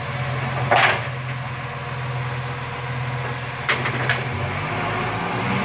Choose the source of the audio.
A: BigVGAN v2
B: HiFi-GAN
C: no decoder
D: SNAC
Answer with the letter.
C